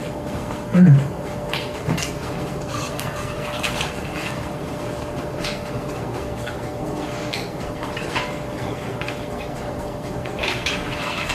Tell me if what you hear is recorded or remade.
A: remade